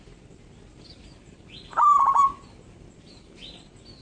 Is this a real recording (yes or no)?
yes